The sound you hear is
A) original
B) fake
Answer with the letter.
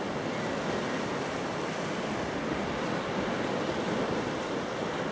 A